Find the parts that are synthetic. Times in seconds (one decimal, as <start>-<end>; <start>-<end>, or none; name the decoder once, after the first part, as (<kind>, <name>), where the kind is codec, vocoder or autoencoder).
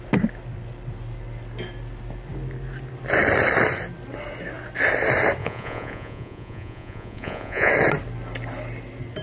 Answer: 5.4-7.7 (vocoder, Vocos)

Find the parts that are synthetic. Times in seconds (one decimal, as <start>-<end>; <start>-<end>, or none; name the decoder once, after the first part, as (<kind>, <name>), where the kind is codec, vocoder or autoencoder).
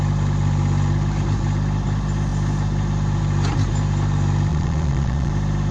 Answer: 4.5-5.3 (vocoder, Vocos)